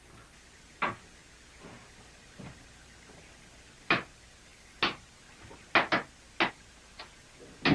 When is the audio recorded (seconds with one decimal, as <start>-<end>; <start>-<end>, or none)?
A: 0.0-7.7

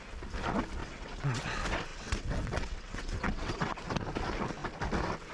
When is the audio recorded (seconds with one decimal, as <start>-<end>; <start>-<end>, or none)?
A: 0.0-0.8; 1.4-1.9; 3.8-5.3